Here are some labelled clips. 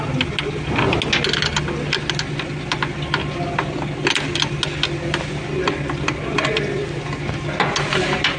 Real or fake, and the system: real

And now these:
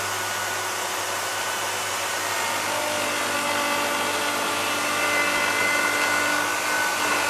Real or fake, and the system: real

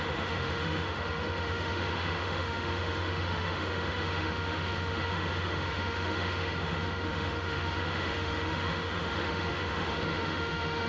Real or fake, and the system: fake, autoencoder, DAC-VAE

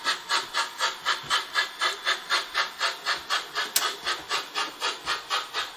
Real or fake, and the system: real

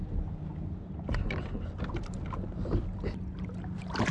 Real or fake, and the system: real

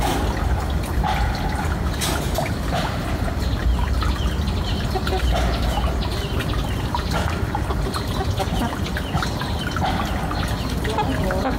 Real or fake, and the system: real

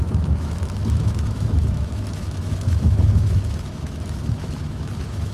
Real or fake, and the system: fake, autoencoder, DAC-VAE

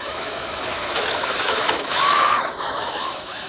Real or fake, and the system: fake, autoencoder, DAC-VAE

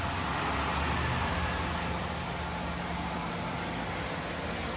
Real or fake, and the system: real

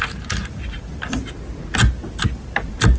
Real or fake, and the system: real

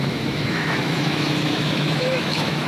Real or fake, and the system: fake, autoencoder, DAC-VAE